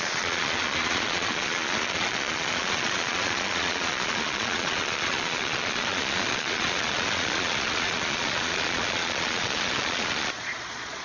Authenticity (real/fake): fake